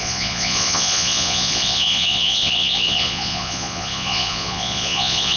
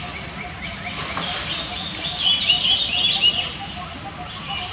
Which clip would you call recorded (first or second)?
second